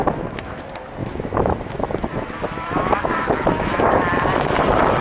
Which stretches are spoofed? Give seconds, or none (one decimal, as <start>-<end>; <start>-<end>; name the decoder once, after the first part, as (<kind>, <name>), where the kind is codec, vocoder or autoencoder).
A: 0.0-0.6 (autoencoder, DAC-VAE); 1.0-4.0